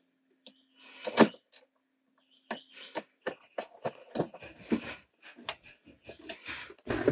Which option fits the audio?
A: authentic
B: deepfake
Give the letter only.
A